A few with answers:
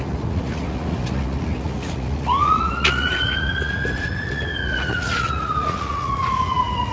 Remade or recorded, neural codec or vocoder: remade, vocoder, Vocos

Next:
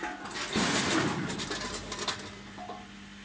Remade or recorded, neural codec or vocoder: recorded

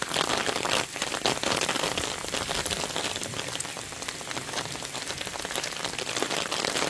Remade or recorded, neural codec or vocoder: recorded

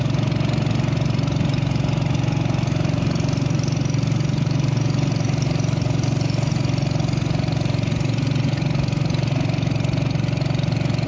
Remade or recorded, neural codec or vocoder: recorded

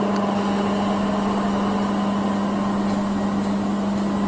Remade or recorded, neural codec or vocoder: recorded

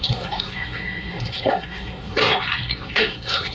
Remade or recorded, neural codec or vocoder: remade, codec, SNAC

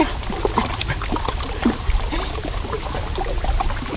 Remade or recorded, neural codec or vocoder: recorded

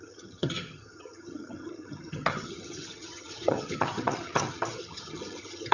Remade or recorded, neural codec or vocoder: remade, vocoder, HiFi-GAN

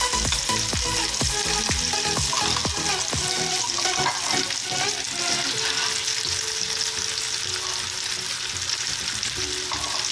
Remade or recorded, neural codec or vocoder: recorded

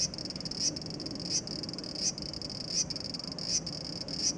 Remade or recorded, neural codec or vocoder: recorded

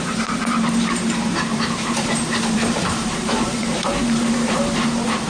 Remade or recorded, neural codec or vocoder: remade, vocoder, BigVGAN v2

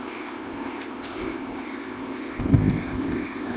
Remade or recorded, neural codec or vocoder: remade, codec, ZipCodec